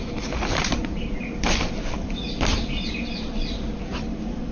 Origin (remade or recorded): remade